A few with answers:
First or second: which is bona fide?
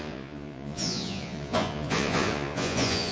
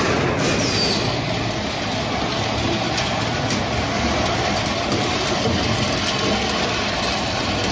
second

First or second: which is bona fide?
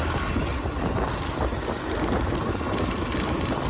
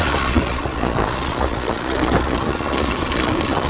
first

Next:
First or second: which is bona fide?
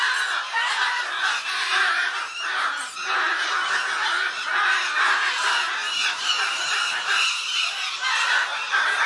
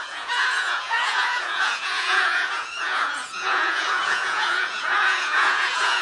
first